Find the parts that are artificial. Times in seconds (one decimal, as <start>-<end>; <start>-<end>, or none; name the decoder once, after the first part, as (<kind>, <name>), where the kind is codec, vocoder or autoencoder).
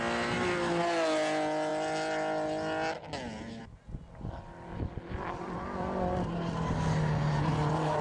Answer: none